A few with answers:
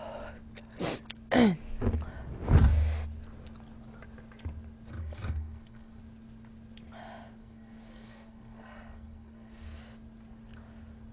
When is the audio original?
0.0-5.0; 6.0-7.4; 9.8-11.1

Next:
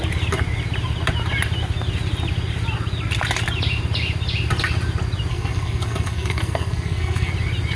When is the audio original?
0.0-5.3; 7.3-7.8